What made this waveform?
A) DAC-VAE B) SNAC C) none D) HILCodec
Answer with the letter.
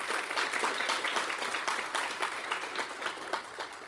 C